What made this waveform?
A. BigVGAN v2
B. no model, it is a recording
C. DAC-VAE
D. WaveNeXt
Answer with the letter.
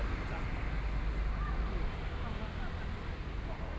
B